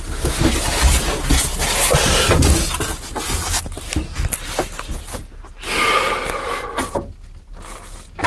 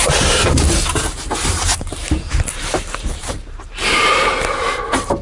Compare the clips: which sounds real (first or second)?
first